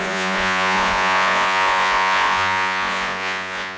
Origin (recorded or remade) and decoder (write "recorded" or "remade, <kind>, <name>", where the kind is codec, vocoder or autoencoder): remade, vocoder, Vocos